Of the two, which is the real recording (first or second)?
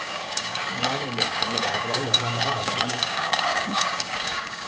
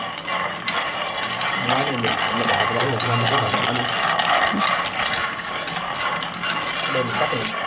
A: second